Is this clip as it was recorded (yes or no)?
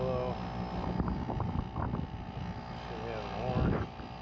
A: yes